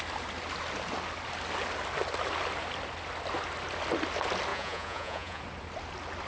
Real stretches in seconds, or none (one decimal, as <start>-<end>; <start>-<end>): 0.0-4.5; 5.4-6.3